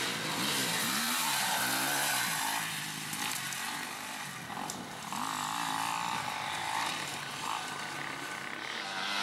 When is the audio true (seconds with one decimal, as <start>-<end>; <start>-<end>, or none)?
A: 0.0-0.6; 1.6-9.2